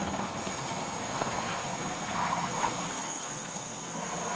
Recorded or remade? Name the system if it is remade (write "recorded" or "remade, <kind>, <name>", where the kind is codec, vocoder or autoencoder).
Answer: remade, codec, SNAC